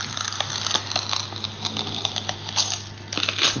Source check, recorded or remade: recorded